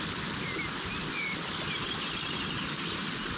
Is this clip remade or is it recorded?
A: recorded